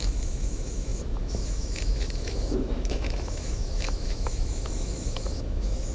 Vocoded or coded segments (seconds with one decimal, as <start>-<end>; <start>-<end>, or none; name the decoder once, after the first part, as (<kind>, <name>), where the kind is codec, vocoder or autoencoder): 0.0-5.9 (autoencoder, DAC-VAE)